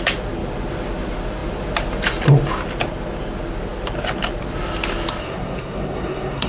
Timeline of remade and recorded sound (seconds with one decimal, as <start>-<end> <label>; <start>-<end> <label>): 0.0-5.2 recorded; 5.2-6.5 remade